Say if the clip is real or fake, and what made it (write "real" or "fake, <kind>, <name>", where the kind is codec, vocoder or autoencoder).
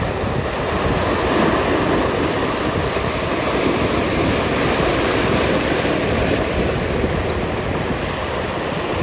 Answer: fake, vocoder, BigVGAN v2